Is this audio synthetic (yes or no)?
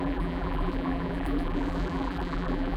yes